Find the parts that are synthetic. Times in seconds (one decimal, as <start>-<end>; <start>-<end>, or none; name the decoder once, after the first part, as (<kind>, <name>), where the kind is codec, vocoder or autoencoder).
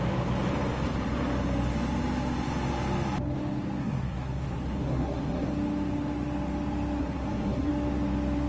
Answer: 3.8-5.5 (codec, SNAC); 7.0-7.7